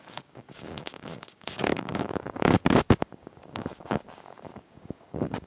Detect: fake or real fake